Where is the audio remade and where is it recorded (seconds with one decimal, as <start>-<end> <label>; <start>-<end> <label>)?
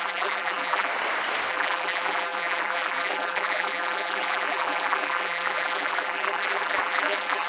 0.0-0.9 remade; 0.9-1.5 recorded; 1.5-7.5 remade